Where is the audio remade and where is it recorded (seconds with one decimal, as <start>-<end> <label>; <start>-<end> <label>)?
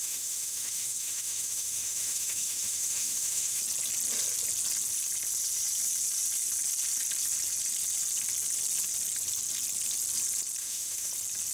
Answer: 0.0-3.6 remade; 3.6-10.6 recorded; 10.6-11.1 remade; 11.1-11.5 recorded